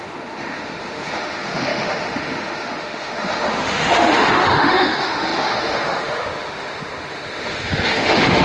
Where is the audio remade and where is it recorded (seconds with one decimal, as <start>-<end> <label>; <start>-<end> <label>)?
0.0-8.4 remade